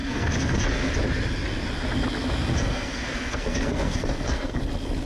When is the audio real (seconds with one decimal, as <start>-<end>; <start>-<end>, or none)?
0.9-2.5; 4.6-5.1